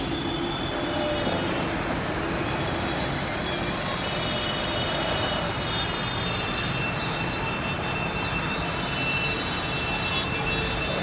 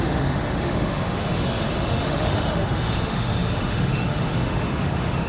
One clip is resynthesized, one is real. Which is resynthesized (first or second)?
second